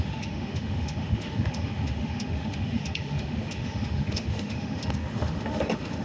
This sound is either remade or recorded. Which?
remade